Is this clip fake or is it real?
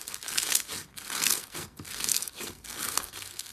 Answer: fake